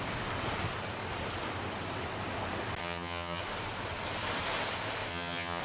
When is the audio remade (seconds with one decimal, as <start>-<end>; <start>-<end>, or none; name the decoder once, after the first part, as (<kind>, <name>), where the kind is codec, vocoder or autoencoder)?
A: 2.8-3.4 (vocoder, HiFi-GAN); 5.1-5.6